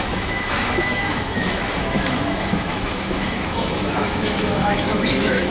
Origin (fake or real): fake